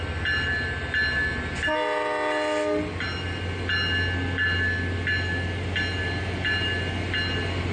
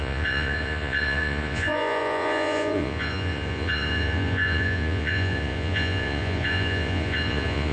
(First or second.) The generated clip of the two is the second